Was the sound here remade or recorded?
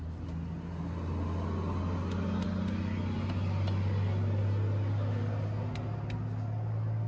recorded